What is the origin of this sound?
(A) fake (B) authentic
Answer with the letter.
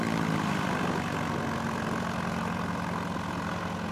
B